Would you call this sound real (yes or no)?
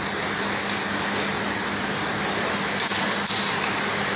yes